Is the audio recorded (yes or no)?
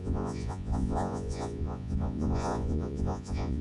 no